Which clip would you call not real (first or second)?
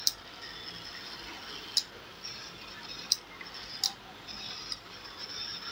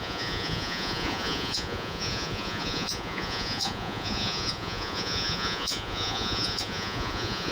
second